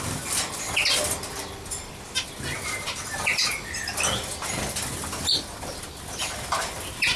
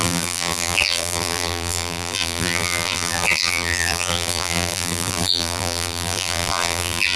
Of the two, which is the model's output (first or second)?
second